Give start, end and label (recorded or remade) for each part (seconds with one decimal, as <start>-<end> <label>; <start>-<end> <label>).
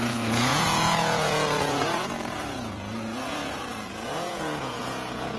0.0-5.4 remade